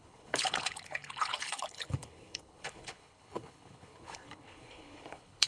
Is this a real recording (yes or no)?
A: no